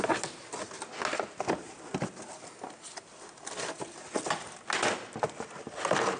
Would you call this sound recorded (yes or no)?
yes